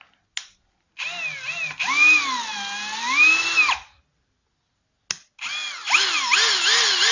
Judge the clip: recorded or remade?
recorded